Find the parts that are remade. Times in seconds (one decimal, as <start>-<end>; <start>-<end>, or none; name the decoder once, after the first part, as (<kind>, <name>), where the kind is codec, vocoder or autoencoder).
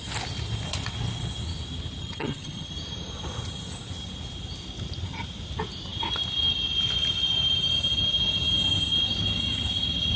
2.0-2.7 (vocoder, HiFi-GAN)